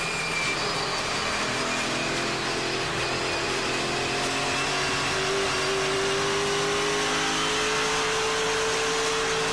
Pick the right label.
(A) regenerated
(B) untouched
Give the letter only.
B